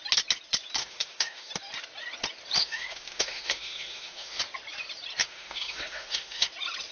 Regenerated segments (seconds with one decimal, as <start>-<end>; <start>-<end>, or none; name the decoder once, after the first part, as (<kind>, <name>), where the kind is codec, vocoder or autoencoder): 0.8-1.5 (autoencoder, DAC-VAE); 2.6-4.4; 5.2-6.5

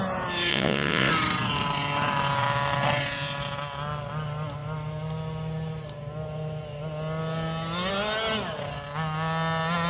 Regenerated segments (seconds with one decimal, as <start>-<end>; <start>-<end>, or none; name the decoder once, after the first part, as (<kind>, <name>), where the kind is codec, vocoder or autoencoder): 0.5-1.1 (vocoder, WaveNeXt)

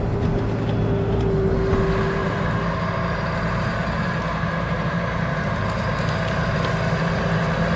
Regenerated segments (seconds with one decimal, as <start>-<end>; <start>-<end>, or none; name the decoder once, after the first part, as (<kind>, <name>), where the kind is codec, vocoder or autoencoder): 2.2-6.7 (vocoder, BigVGAN v2)